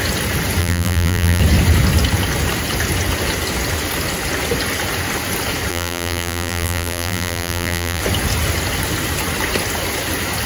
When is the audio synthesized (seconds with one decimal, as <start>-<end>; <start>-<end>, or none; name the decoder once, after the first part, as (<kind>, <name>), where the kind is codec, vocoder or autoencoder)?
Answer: 0.6-1.4 (vocoder, BigVGAN v2); 5.7-8.0